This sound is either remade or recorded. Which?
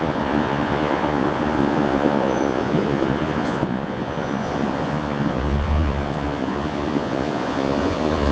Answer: remade